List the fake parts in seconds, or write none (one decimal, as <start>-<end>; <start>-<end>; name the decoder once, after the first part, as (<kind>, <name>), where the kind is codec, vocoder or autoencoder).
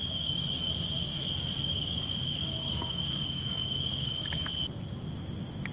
0.0-0.7 (codec, DAC); 1.1-4.5